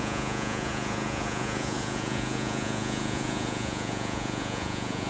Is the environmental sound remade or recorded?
remade